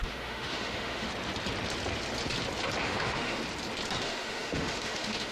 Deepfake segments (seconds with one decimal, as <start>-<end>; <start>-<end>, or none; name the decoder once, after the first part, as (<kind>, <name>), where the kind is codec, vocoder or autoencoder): 0.0-1.1 (autoencoder, DAC-VAE); 2.8-3.4; 4.0-5.3